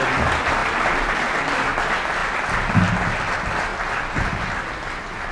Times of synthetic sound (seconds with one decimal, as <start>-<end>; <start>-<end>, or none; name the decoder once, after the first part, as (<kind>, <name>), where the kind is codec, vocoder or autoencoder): none